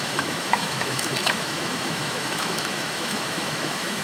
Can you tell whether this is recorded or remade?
remade